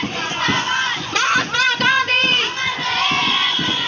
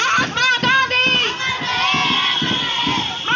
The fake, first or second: first